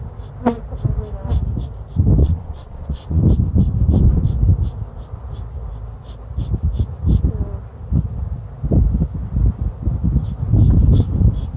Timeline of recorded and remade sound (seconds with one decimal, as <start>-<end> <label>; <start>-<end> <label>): 0.0-2.2 recorded; 2.2-3.2 remade; 3.2-11.6 recorded